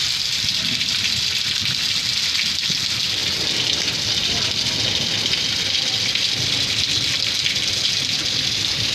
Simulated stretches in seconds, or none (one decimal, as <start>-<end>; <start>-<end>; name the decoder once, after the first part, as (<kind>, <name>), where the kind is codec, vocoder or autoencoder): none